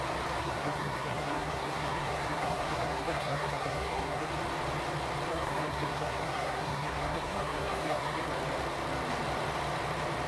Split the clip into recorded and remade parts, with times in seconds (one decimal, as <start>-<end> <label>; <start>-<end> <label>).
0.0-0.4 recorded; 0.4-4.3 remade; 4.3-5.3 recorded; 5.3-8.3 remade; 8.3-10.3 recorded